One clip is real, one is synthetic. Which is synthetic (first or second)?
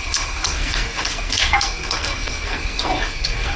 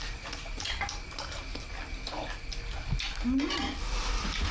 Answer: first